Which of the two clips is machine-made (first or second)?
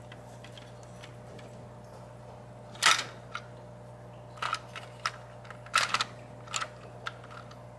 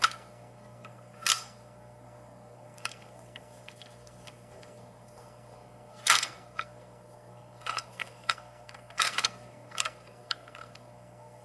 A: second